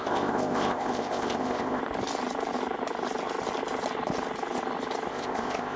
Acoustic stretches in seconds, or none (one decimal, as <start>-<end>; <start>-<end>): 1.8-5.1